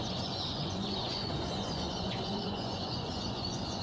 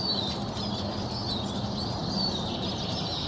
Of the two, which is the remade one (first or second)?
first